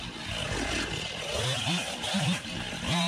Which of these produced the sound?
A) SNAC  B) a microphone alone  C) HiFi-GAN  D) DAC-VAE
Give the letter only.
B